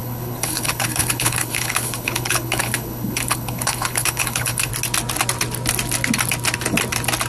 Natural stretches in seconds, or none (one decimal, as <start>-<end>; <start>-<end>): 4.7-7.3